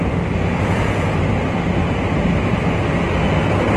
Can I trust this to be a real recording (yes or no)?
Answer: yes